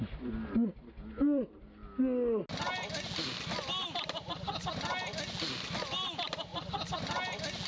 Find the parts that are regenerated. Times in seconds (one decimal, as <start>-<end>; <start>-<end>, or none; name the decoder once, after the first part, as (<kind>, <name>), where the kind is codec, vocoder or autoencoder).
none